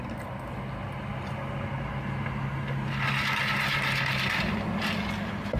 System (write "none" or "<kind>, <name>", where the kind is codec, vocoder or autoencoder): none